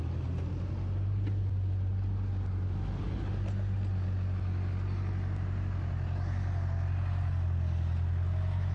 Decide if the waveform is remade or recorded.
recorded